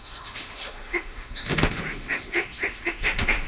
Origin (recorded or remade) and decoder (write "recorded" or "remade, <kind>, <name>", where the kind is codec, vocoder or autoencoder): remade, autoencoder, DAC-VAE